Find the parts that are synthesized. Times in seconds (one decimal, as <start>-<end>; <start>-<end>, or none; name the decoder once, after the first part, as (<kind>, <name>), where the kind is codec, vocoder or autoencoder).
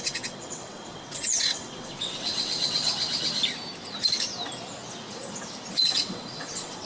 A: 0.0-2.9 (vocoder, WaveNeXt); 5.8-6.9